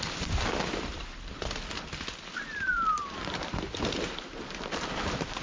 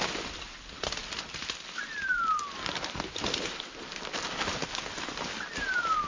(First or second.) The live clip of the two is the second